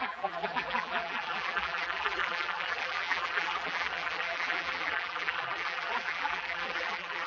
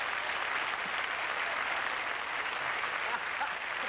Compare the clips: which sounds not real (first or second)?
first